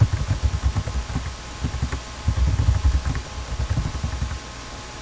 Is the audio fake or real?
real